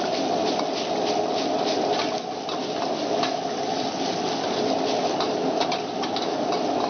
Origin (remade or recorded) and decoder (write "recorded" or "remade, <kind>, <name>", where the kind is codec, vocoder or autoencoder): recorded